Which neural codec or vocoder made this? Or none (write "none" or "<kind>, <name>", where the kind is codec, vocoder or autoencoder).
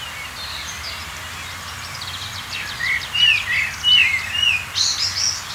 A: none